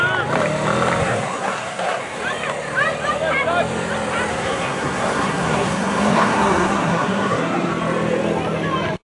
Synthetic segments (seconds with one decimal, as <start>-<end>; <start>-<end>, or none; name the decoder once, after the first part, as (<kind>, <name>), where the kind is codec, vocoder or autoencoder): 1.0-2.2 (codec, SNAC); 4.3-7.7